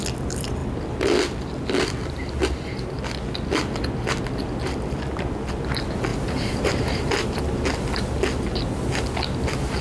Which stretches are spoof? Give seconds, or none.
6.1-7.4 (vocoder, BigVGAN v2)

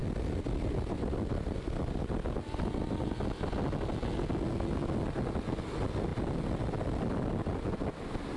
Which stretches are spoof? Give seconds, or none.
0.0-1.8 (vocoder, BigVGAN v2)

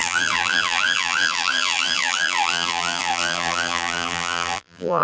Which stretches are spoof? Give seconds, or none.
0.0-5.0 (vocoder, BigVGAN v2)